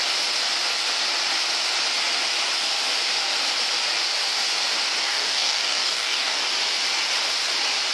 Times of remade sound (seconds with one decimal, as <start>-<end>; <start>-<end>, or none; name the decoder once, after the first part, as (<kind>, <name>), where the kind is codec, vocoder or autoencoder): 5.0-6.4 (codec, DAC)